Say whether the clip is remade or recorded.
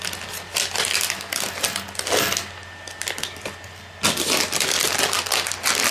recorded